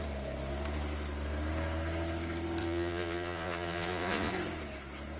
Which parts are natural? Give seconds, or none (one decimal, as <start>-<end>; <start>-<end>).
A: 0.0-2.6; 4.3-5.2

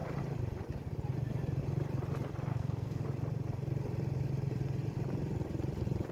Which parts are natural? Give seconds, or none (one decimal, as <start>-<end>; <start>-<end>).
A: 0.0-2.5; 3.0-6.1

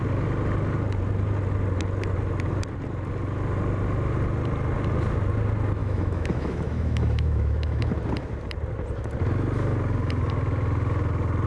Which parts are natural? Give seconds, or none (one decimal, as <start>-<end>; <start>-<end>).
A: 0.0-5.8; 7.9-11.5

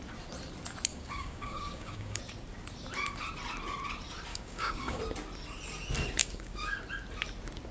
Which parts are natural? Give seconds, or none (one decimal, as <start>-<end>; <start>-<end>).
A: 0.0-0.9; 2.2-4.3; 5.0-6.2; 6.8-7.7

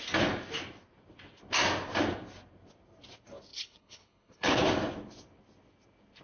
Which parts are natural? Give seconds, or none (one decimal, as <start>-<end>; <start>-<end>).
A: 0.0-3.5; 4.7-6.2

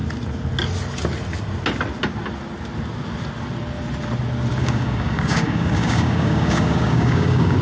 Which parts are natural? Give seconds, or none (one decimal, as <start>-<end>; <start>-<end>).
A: 0.0-4.6

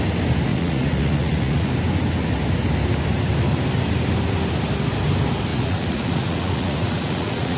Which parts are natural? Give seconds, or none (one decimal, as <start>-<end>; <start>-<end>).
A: 0.0-0.5; 1.7-5.5

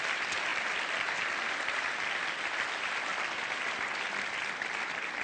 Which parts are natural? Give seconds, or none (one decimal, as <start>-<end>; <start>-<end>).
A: 0.0-5.2